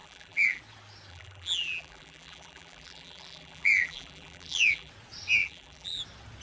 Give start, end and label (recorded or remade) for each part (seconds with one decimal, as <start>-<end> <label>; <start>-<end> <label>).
0.0-0.6 remade; 0.6-1.1 recorded; 1.1-4.9 remade; 4.9-5.4 recorded; 5.4-6.0 remade; 6.0-6.4 recorded